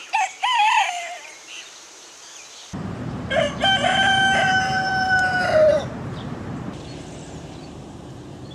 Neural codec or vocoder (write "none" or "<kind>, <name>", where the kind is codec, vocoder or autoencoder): vocoder, BigVGAN v2